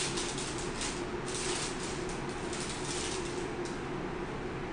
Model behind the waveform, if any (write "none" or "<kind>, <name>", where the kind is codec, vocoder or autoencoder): none